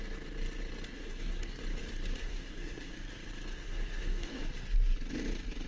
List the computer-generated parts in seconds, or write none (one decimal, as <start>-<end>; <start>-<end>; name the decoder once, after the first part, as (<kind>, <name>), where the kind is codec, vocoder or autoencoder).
0.9-1.6 (codec, SNAC); 2.2-2.9; 3.5-4.4